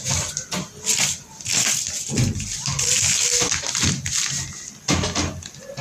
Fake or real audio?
real